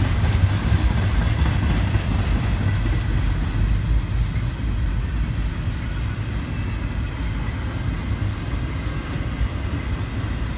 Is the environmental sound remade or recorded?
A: recorded